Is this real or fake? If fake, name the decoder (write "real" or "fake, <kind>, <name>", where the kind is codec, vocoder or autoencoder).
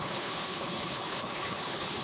fake, codec, HILCodec